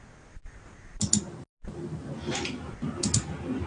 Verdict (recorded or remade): recorded